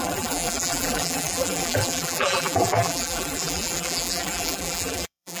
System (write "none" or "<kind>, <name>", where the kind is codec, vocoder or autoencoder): vocoder, BigVGAN v2